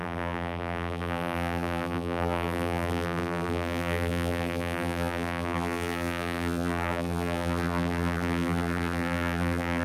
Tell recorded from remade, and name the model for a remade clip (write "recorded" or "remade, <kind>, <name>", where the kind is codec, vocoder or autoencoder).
remade, vocoder, BigVGAN v2